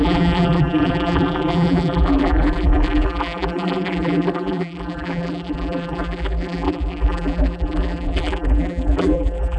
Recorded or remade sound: remade